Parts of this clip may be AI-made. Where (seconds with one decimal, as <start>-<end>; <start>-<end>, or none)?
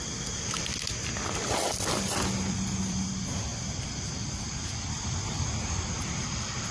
0.0-0.7; 1.3-6.7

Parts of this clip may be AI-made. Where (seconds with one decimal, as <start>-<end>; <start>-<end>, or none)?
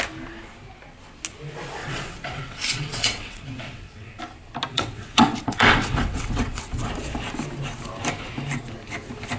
1.8-4.2; 4.7-6.9